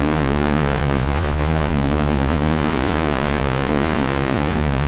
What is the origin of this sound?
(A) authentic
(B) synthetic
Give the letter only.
B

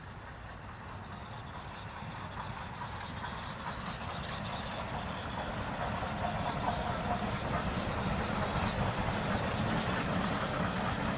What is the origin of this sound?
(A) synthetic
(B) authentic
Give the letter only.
B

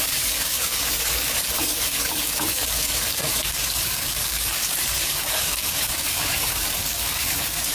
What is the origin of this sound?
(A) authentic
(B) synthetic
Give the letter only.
B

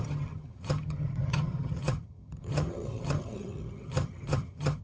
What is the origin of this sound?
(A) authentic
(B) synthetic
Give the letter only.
B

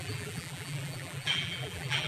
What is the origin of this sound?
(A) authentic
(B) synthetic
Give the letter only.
B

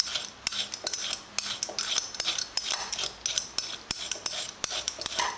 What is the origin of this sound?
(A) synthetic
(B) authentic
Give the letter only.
B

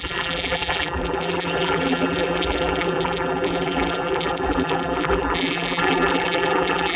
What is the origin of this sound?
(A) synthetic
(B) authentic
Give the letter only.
A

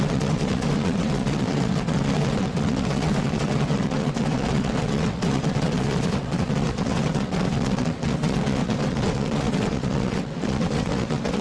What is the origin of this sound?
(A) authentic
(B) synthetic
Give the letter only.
B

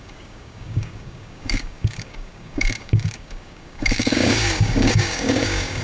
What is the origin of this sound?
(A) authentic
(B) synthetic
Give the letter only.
B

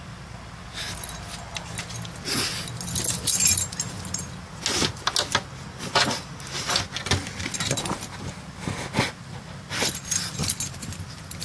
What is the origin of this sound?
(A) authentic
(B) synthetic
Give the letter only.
A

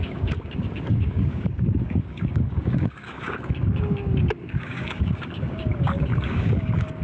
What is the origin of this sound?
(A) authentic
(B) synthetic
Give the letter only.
B